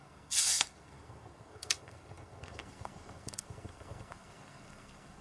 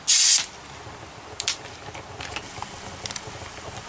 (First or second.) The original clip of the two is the second